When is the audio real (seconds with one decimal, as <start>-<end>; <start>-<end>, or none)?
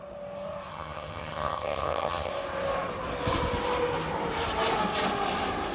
0.0-0.7; 2.3-5.7